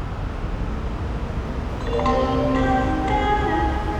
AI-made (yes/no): no